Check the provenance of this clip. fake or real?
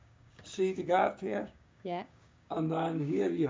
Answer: fake